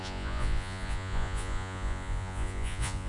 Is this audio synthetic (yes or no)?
yes